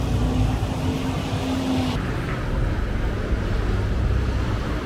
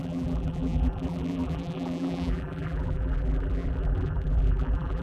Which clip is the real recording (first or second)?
first